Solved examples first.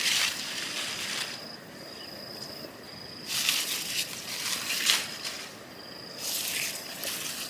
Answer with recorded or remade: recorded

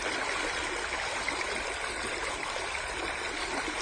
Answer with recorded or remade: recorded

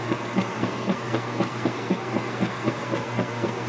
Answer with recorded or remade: remade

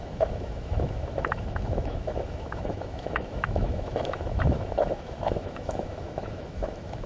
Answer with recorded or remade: remade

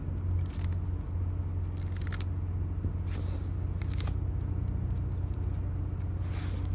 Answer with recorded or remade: recorded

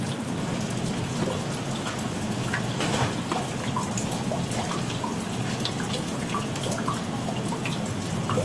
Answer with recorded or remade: recorded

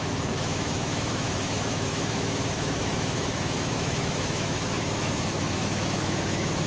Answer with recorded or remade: remade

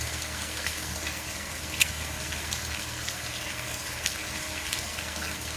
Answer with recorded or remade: remade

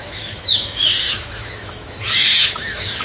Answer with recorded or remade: remade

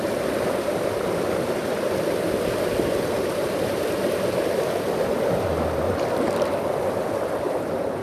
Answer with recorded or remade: recorded